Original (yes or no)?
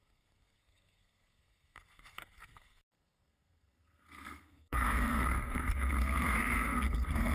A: no